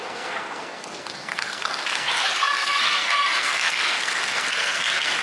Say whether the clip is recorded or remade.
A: remade